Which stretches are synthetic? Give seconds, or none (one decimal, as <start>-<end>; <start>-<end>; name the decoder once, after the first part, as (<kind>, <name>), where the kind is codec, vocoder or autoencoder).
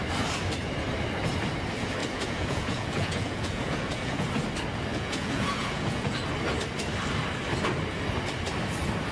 2.0-4.3 (vocoder, Vocos); 4.9-6.2